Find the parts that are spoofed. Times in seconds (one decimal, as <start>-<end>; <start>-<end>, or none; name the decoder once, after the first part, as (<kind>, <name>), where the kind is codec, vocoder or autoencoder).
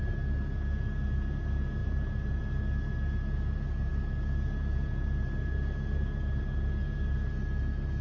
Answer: 1.8-2.4 (vocoder, BigVGAN v2)